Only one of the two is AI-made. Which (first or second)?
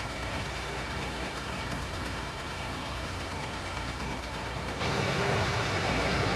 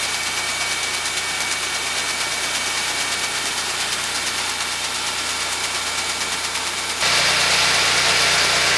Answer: first